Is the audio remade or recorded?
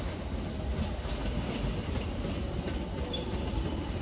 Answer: recorded